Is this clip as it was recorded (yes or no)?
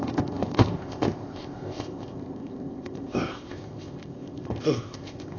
no